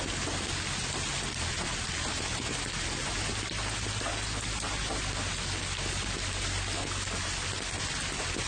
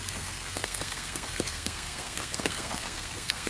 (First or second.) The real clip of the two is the first